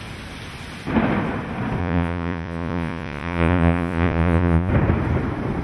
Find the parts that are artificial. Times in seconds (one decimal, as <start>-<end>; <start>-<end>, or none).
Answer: 1.8-4.7